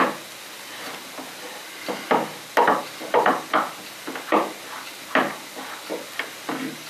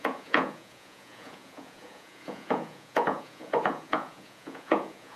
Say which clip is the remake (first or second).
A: second